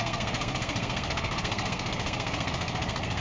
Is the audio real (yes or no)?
no